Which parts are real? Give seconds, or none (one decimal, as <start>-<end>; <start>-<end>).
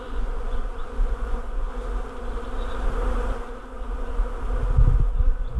1.7-5.1